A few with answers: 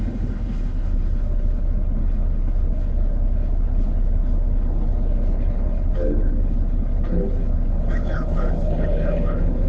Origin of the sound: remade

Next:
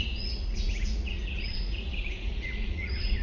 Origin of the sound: remade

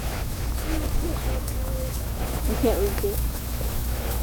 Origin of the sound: remade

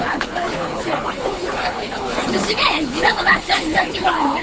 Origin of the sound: remade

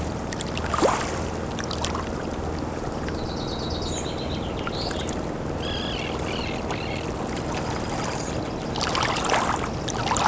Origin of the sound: recorded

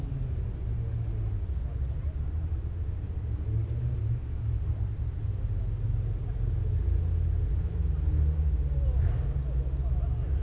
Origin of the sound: recorded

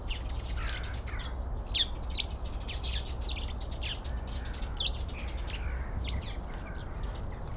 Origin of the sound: recorded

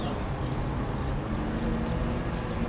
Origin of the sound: recorded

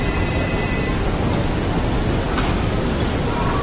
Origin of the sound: recorded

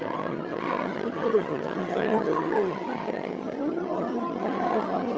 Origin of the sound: remade